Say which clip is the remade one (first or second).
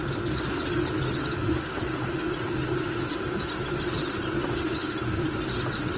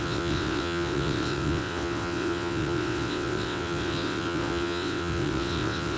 second